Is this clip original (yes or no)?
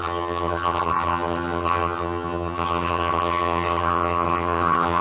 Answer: no